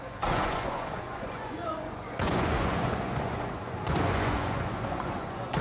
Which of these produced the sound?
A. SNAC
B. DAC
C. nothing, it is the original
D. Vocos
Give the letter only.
D